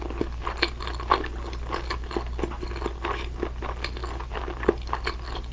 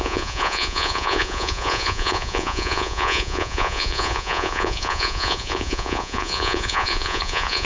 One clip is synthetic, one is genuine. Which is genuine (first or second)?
first